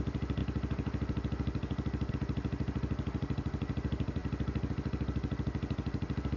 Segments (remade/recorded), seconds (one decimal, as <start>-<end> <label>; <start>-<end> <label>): 0.0-6.4 recorded